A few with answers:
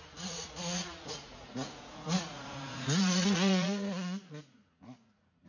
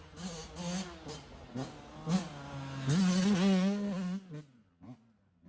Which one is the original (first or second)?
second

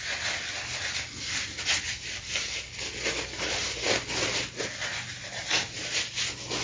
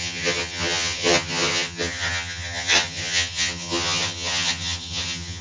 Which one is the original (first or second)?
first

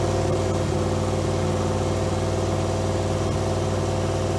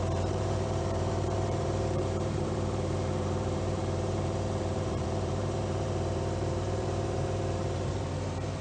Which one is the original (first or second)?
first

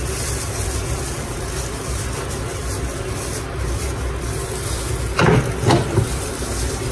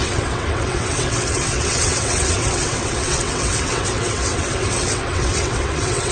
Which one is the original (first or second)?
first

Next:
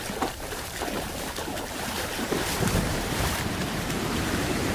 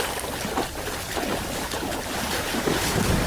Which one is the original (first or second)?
second